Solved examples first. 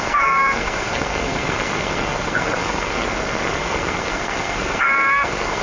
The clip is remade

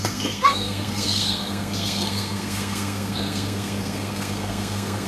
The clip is remade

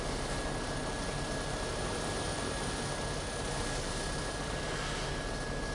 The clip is recorded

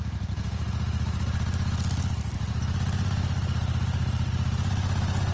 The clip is recorded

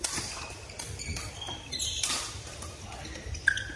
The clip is recorded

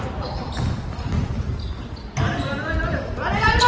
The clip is recorded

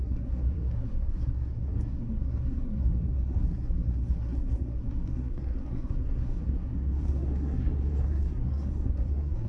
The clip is remade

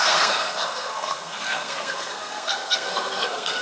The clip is remade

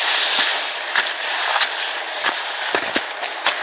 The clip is recorded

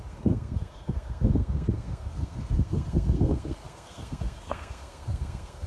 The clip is remade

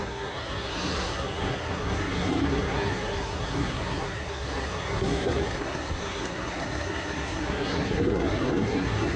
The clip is remade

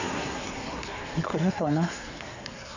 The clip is remade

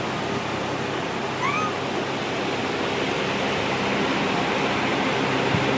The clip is recorded